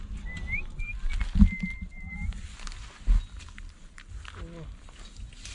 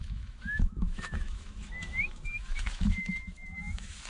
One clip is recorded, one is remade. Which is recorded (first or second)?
first